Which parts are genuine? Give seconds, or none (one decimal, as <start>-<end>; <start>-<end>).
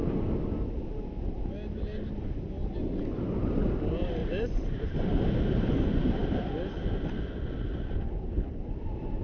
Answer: 0.0-4.2; 5.1-9.2